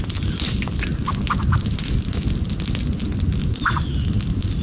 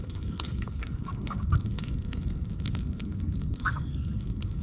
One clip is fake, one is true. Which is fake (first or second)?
second